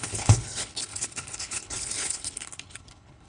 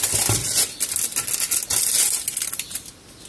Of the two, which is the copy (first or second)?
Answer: first